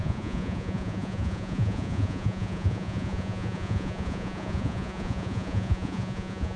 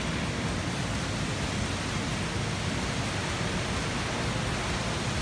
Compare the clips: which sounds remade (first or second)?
first